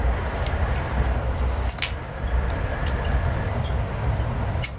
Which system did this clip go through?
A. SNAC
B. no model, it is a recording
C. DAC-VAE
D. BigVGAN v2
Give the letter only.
B